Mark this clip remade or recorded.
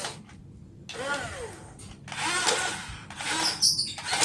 recorded